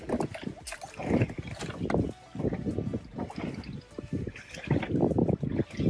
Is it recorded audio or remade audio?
recorded